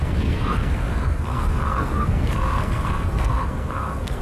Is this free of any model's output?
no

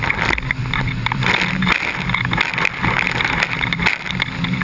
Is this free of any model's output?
yes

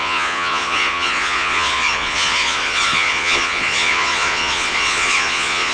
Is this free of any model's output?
no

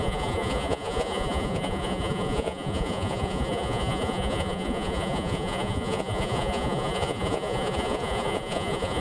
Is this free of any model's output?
no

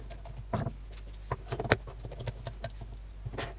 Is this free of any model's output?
yes